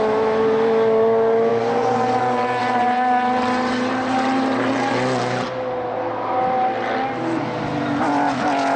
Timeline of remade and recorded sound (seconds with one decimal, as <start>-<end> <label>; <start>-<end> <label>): 0.0-1.5 recorded; 1.5-2.2 remade; 2.2-2.6 recorded; 2.6-4.9 remade; 4.9-8.8 recorded